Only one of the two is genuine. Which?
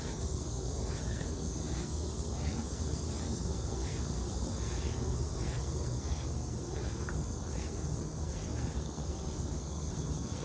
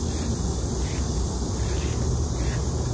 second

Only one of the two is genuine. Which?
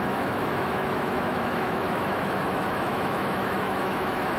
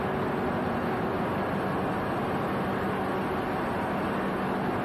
second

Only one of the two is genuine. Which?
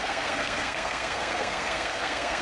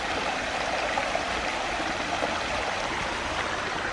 second